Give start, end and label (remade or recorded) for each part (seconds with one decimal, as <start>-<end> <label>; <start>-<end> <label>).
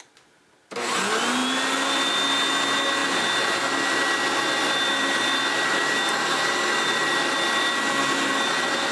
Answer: 0.0-8.9 recorded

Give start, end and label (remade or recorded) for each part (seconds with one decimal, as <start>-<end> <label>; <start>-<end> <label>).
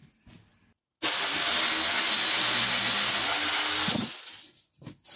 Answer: 0.0-5.2 recorded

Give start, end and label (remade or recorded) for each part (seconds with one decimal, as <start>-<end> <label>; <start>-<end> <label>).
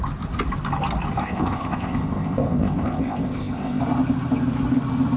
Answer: 0.0-1.2 recorded; 1.2-3.8 remade; 3.8-5.2 recorded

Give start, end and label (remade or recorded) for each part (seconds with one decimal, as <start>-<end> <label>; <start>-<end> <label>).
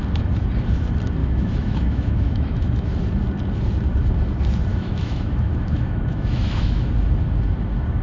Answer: 0.0-1.2 recorded; 1.2-2.9 remade; 2.9-4.7 recorded; 4.7-6.9 remade; 6.9-8.0 recorded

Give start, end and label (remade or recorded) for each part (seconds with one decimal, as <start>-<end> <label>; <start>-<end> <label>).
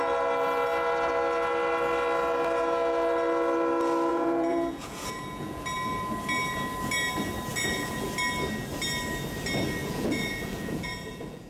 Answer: 0.0-4.1 recorded; 4.1-5.6 remade; 5.6-7.5 recorded; 7.5-8.1 remade; 8.1-9.8 recorded; 9.8-11.5 remade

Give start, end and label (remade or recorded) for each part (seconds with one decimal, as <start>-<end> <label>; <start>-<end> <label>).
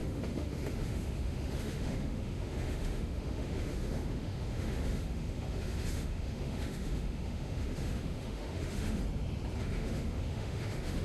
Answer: 0.0-9.0 remade; 9.0-9.6 recorded; 9.6-11.0 remade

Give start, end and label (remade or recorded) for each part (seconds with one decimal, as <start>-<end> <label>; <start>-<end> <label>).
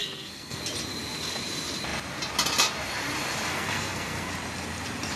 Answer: 0.0-0.6 remade; 0.6-3.5 recorded; 3.5-4.3 remade; 4.3-5.2 recorded